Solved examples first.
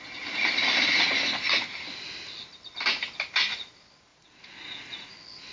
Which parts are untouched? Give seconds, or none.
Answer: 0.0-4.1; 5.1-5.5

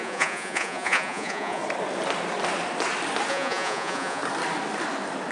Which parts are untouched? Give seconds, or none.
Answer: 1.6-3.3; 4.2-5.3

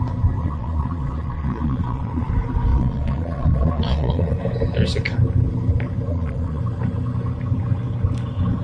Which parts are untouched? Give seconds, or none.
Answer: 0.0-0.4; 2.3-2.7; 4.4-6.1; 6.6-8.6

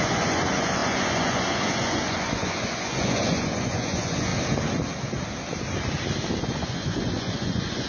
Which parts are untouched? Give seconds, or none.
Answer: 4.3-6.4